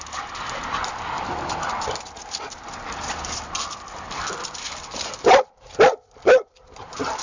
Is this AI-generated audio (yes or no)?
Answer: yes